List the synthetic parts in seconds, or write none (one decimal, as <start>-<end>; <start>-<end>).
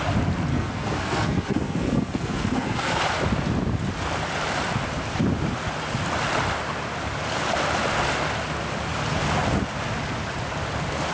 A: 0.5-3.0